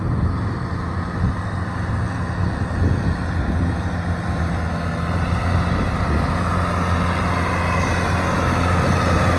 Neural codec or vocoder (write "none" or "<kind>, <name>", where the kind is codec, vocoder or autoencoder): none